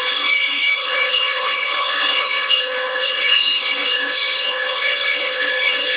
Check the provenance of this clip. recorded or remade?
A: remade